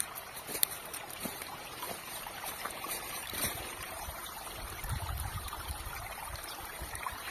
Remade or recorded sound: remade